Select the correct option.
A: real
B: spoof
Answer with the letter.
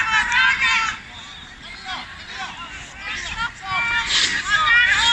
A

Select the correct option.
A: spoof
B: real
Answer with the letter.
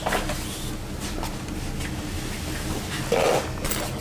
B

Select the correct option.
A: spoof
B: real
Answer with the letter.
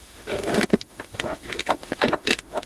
A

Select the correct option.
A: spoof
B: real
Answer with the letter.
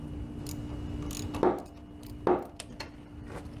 B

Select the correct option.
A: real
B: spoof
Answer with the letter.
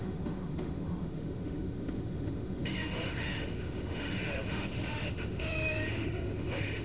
B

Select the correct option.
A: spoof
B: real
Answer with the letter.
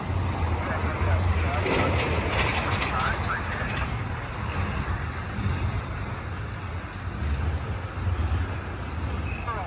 B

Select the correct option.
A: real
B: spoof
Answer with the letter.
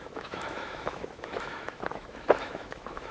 B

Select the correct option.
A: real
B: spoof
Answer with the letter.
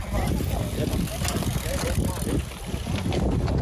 A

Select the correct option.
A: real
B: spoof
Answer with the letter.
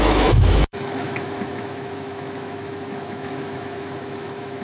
B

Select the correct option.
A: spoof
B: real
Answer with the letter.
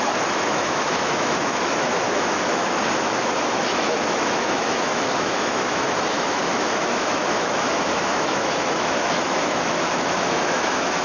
A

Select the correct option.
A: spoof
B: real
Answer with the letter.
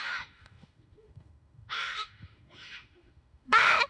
A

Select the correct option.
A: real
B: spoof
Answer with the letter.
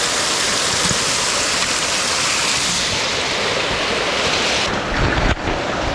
A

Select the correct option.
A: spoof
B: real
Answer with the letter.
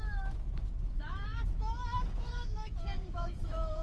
A